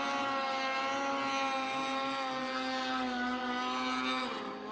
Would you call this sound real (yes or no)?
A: yes